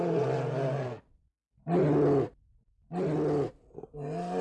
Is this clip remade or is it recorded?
recorded